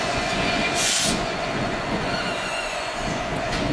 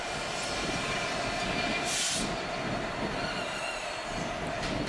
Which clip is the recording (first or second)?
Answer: second